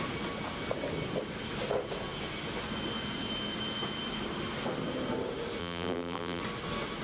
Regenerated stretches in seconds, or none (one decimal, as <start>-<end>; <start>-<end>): 5.6-6.4